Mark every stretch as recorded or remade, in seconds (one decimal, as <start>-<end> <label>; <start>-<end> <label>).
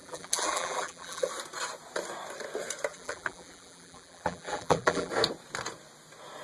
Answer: 0.0-1.3 remade; 1.3-2.9 recorded; 2.9-5.1 remade; 5.1-6.4 recorded